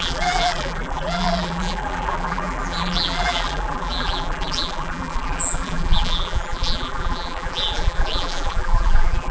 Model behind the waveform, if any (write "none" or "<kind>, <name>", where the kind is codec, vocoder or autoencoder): vocoder, BigVGAN v2